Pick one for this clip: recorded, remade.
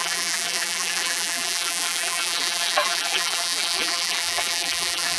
remade